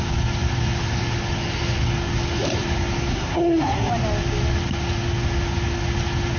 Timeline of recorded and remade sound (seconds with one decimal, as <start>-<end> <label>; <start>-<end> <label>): 0.0-3.1 recorded; 3.1-3.9 remade; 3.9-6.4 recorded